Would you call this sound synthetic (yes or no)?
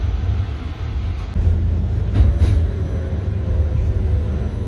no